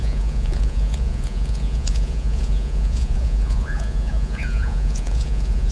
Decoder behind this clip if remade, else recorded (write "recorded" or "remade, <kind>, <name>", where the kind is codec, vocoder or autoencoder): remade, vocoder, Vocos